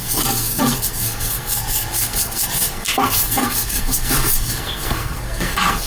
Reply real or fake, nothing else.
fake